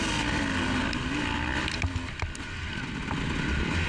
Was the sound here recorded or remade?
recorded